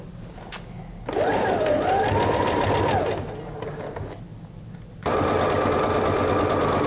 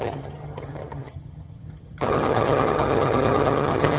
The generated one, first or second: second